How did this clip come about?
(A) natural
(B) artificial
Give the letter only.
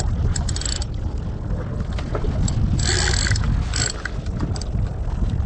A